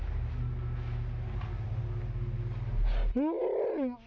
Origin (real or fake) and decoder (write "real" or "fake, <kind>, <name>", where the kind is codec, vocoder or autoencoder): real